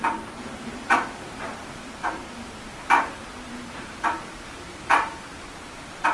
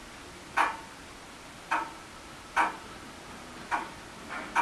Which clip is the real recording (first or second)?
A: second